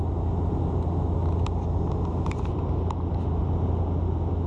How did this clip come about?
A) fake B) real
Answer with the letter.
B